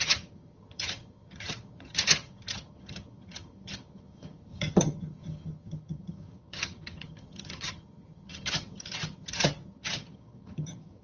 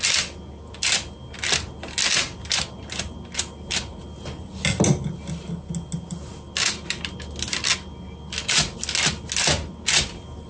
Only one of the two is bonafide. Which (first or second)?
second